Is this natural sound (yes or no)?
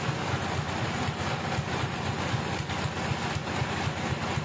yes